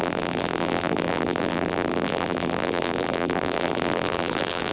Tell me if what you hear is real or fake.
fake